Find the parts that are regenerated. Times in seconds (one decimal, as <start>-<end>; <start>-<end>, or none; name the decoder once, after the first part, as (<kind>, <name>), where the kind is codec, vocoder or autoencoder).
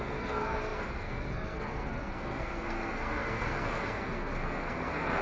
0.0-5.2 (codec, SNAC)